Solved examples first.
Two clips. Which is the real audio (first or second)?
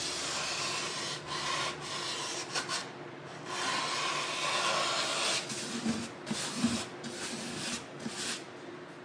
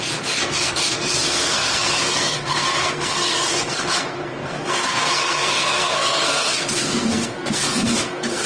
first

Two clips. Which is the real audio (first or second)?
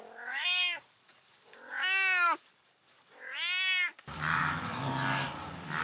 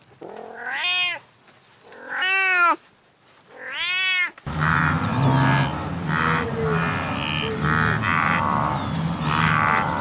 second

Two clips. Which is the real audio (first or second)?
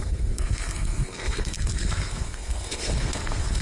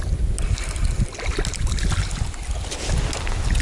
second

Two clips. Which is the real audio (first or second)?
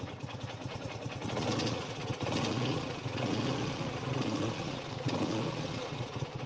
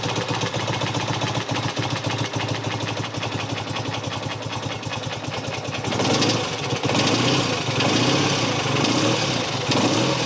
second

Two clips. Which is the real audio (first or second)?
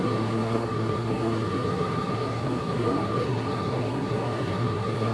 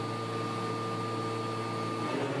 second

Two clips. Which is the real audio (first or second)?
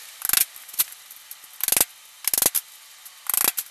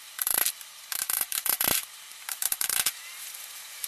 first